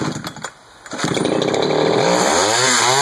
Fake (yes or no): no